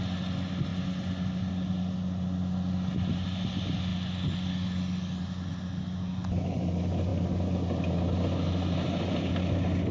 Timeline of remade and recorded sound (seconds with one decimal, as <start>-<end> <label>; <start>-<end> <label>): 0.0-9.9 recorded